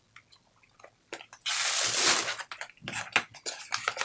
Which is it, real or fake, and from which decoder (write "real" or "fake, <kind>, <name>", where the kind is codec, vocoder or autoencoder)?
real